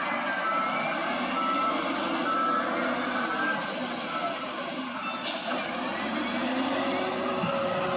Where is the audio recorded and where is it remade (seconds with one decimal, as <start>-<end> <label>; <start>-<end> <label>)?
0.0-8.0 recorded